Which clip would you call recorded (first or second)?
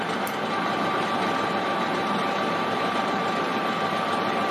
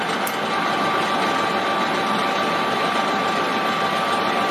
second